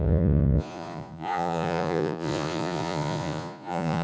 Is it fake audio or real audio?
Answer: fake